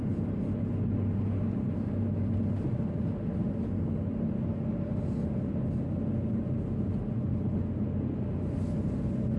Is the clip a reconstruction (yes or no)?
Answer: no